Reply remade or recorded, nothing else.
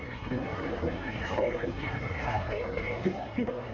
remade